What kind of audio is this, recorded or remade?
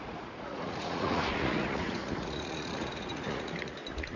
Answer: remade